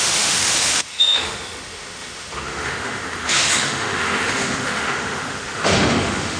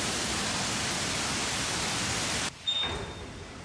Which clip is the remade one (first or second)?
first